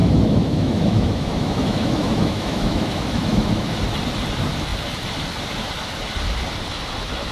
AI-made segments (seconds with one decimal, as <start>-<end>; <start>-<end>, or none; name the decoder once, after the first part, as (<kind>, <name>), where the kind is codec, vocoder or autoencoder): 0.0-3.8 (autoencoder, DAC-VAE)